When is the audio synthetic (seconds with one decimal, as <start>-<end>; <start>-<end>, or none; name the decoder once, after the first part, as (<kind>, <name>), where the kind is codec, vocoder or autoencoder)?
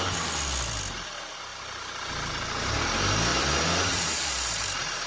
3.3-5.1 (vocoder, BigVGAN v2)